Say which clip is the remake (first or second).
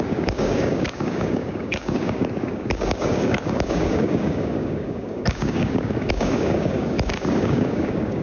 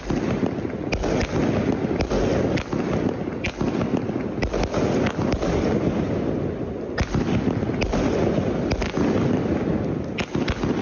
first